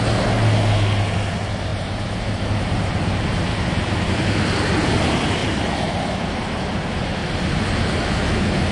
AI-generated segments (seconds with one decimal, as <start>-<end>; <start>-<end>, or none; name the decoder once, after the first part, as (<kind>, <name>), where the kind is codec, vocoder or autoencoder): 1.7-3.3 (vocoder, BigVGAN v2); 5.4-6.7; 7.2-7.8